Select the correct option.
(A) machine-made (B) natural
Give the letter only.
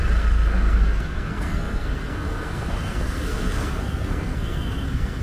A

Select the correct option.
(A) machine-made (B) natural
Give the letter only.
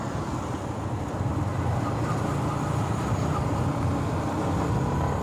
B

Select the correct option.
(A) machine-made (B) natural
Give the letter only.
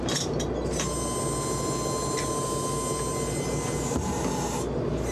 B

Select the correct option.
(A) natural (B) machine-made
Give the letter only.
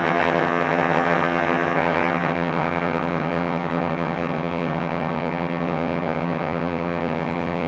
B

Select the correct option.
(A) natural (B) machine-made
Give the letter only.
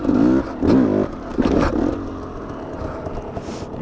A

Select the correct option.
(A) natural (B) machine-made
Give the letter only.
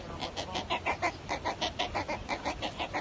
A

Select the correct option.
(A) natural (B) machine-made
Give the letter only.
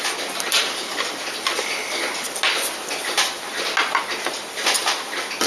A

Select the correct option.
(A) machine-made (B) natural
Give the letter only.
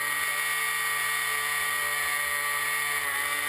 B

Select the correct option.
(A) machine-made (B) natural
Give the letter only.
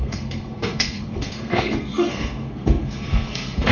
A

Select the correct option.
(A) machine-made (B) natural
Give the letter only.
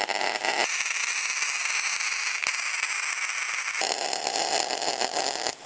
A